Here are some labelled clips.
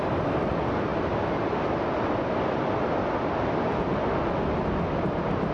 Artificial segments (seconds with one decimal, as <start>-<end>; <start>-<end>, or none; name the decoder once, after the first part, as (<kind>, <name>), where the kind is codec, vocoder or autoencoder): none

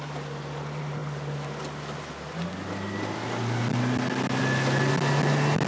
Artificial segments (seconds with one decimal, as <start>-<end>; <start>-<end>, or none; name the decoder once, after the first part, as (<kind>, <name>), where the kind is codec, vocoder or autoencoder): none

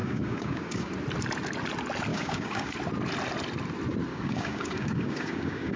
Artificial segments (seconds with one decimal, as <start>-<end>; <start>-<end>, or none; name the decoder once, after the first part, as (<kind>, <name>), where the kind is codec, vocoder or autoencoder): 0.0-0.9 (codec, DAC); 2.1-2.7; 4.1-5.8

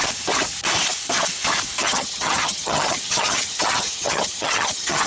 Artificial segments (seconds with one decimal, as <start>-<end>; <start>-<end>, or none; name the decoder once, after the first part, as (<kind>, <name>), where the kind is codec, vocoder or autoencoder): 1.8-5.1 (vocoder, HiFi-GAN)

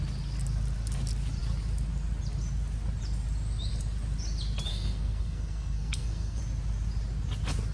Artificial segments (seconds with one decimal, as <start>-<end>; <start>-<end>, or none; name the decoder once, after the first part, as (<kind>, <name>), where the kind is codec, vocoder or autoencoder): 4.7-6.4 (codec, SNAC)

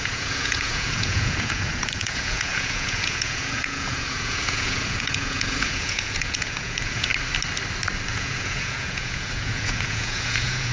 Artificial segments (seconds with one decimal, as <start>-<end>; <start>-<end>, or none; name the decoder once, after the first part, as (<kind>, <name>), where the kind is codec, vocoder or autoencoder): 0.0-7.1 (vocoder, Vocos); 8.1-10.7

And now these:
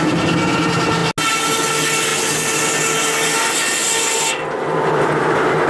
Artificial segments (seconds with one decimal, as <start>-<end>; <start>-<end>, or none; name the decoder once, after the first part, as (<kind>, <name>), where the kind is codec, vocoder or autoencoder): none